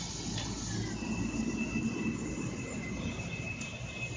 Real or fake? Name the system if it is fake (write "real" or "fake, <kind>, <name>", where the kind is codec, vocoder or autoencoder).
real